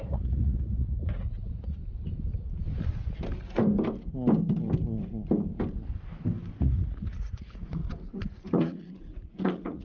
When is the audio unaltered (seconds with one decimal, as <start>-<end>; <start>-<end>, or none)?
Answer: 1.8-6.6; 7.8-8.5